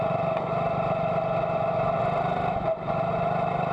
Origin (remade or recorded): recorded